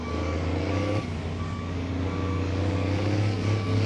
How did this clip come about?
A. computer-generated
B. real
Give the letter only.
A